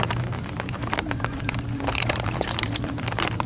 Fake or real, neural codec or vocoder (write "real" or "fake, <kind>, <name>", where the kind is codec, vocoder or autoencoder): fake, vocoder, BigVGAN v2